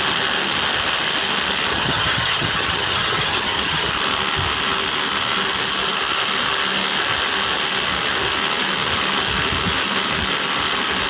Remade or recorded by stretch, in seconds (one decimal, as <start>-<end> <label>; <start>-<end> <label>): 0.0-1.7 recorded; 1.7-3.9 remade; 3.9-11.1 recorded